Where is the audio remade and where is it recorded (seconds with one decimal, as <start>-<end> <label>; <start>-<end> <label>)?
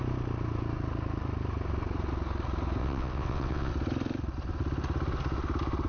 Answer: 0.0-2.8 recorded; 2.8-3.7 remade; 3.7-5.9 recorded